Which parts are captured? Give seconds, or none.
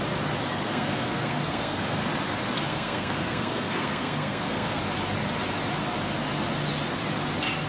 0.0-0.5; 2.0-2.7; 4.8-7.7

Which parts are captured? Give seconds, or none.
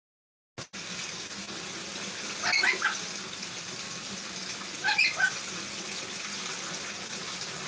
0.0-7.7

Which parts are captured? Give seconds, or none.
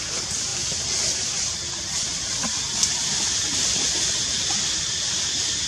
0.0-5.7